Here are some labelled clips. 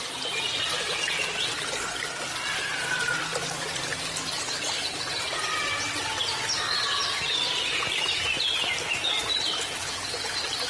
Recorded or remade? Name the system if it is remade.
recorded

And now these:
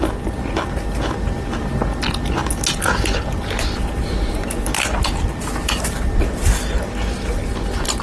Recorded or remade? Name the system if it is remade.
recorded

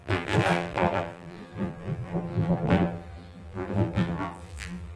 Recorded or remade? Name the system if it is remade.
remade, vocoder, BigVGAN v2